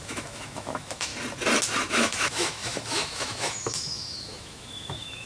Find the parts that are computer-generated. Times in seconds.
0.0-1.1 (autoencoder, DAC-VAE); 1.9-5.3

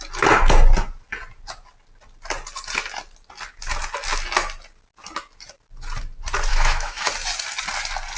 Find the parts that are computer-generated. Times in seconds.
6.5-7.1 (autoencoder, DAC-VAE)

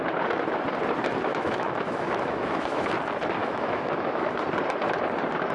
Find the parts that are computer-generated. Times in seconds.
1.3-2.9 (autoencoder, DAC-VAE); 3.4-4.3

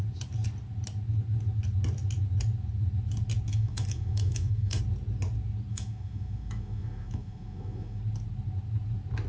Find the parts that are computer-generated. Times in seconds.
3.5-4.8 (autoencoder, DAC-VAE); 5.7-8.0

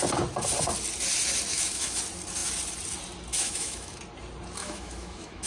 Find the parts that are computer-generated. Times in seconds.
1.5-2.0 (autoencoder, DAC-VAE); 3.3-4.0; 4.6-5.5

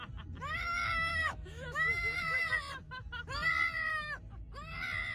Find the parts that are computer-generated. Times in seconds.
1.1-2.5 (autoencoder, DAC-VAE)

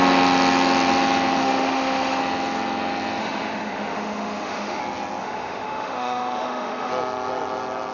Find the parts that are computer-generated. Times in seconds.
1.4-2.2 (autoencoder, DAC-VAE); 3.2-4.8; 5.2-6.9

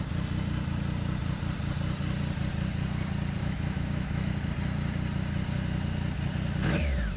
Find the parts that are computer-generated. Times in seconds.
3.4-4.3 (autoencoder, DAC-VAE)